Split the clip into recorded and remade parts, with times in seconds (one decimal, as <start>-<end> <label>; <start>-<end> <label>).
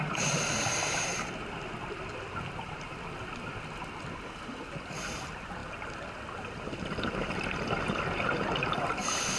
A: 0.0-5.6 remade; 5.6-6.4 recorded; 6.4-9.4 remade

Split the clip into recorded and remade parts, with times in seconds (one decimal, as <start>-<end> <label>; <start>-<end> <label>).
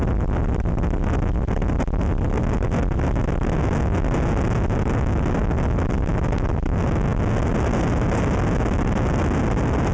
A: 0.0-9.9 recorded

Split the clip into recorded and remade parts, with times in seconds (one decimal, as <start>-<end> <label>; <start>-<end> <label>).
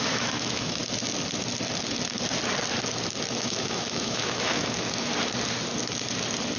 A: 0.0-0.8 remade; 0.8-3.3 recorded; 3.3-5.1 remade; 5.1-6.6 recorded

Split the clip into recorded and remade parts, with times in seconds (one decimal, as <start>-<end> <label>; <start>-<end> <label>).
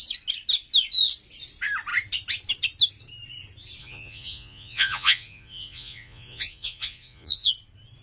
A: 0.0-3.8 recorded; 3.8-7.5 remade; 7.5-8.0 recorded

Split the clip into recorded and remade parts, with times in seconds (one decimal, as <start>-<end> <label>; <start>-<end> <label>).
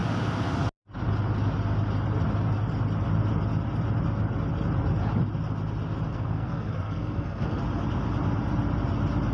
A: 0.0-6.1 recorded; 6.1-7.6 remade; 7.6-9.3 recorded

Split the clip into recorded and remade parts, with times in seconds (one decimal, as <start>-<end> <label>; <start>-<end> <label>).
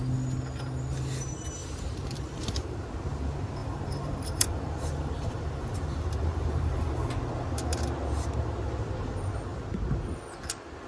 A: 0.0-1.6 recorded; 1.6-2.8 remade; 2.8-3.6 recorded; 3.6-7.1 remade; 7.1-10.9 recorded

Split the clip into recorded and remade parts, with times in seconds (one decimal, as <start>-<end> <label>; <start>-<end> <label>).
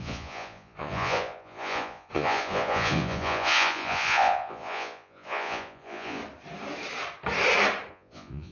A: 0.0-6.2 remade; 6.2-7.9 recorded; 7.9-8.5 remade